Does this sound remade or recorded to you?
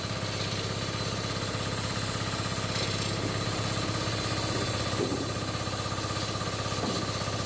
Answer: recorded